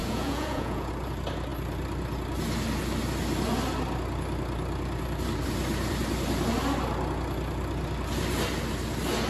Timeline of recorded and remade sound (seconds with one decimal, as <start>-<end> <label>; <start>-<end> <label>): 0.0-0.9 remade; 0.9-9.3 recorded